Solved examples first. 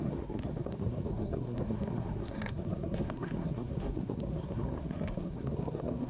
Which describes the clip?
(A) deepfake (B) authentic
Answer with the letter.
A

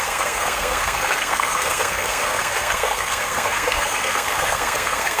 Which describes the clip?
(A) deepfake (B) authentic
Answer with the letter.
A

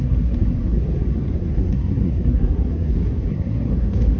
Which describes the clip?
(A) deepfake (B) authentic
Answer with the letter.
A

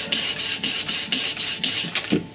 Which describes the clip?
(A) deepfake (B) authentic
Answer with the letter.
B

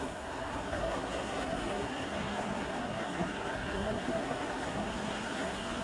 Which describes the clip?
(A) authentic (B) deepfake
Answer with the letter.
B